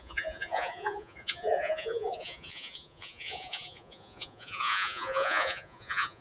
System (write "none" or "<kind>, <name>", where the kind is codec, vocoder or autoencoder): vocoder, Vocos